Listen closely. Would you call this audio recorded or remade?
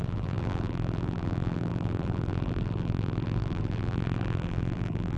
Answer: remade